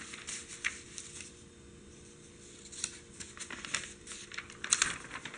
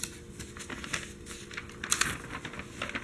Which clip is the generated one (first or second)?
first